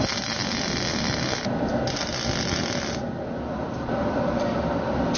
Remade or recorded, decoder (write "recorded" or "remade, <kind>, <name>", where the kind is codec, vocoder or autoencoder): recorded